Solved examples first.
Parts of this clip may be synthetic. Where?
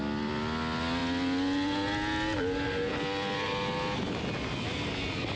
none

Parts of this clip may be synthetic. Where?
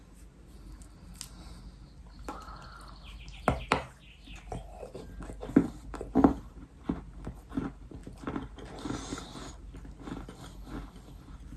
none